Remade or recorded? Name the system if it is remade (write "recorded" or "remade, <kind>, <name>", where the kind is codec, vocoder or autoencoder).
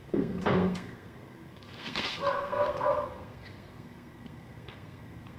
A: remade, codec, SNAC